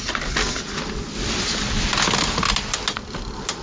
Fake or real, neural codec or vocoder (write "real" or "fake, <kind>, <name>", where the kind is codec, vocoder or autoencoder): real